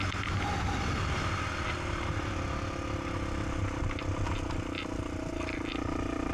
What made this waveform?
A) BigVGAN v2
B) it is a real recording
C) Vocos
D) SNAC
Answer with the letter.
B